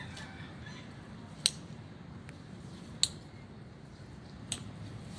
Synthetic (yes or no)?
no